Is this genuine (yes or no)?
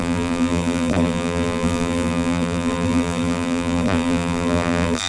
no